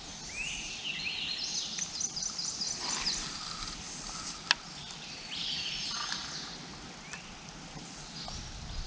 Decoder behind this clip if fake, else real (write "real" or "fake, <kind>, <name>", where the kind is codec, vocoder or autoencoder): real